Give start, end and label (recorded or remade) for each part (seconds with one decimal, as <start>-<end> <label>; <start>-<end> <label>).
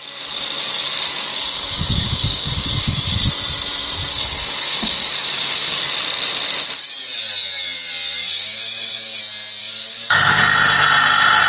0.0-1.3 recorded; 1.3-3.2 remade; 3.2-4.1 recorded; 4.1-5.8 remade; 5.8-8.2 recorded; 8.2-9.2 remade; 9.2-9.6 recorded; 9.6-10.4 remade; 10.4-11.5 recorded